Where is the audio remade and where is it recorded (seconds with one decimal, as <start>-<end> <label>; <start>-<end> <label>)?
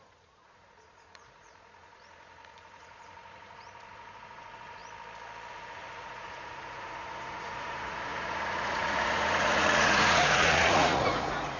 0.0-4.8 remade; 4.8-5.5 recorded; 5.5-11.6 remade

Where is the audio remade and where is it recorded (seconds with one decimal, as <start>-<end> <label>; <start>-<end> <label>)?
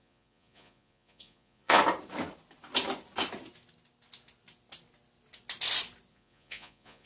0.0-1.8 remade; 1.8-6.1 recorded; 6.1-7.1 remade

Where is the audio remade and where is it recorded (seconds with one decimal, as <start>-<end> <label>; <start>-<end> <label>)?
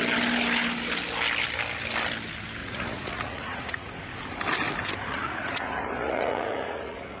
0.0-2.6 recorded; 2.6-3.9 remade; 3.9-5.1 recorded; 5.1-7.2 remade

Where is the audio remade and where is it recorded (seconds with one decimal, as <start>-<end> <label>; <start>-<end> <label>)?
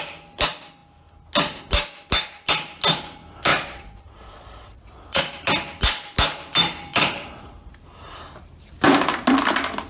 0.0-3.5 recorded; 3.5-5.2 remade; 5.2-9.9 recorded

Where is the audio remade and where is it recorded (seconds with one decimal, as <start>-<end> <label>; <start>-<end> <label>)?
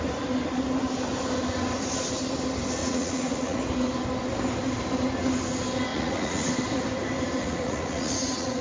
0.0-2.8 recorded; 2.8-3.6 remade; 3.6-5.9 recorded; 5.9-6.5 remade; 6.5-7.4 recorded; 7.4-8.6 remade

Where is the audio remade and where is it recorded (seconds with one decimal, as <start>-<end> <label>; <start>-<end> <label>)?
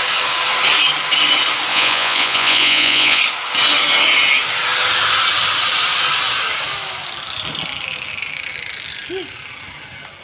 0.0-1.7 recorded; 1.7-3.2 remade; 3.2-10.2 recorded